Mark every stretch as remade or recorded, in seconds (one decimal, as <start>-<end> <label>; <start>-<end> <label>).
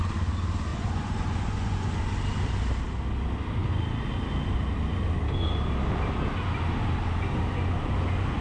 0.0-0.7 recorded; 0.7-2.0 remade; 2.0-8.4 recorded